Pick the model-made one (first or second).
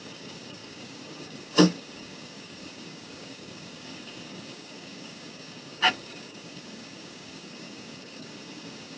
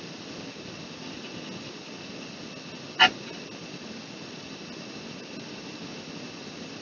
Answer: first